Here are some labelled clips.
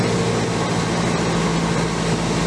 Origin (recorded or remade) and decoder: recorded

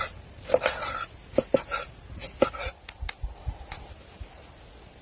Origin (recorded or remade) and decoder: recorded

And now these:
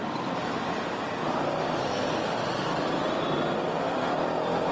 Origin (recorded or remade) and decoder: recorded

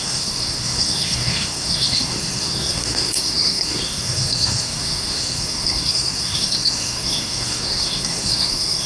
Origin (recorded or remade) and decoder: remade, codec, SNAC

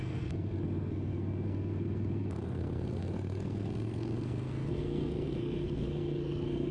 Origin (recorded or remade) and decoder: remade, codec, SNAC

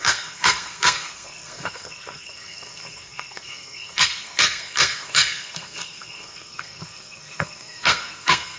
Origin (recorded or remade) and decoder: remade, codec, SNAC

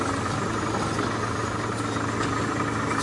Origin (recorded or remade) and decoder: recorded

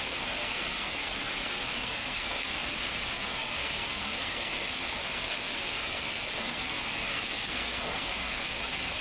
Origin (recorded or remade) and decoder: remade, codec, SNAC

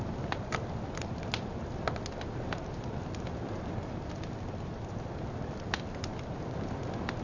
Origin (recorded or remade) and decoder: recorded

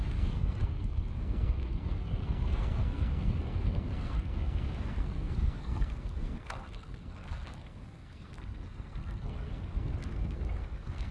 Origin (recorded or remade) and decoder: remade, codec, SNAC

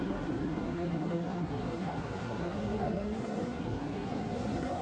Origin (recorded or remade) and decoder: remade, codec, SNAC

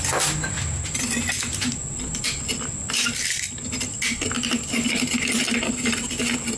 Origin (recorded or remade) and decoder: recorded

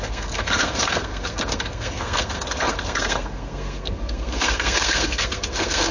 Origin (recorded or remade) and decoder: remade, codec, SNAC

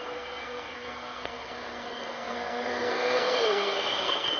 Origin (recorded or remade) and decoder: remade, codec, SNAC